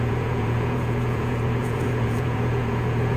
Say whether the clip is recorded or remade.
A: remade